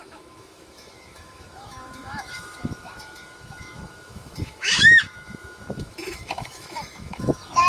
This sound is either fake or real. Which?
fake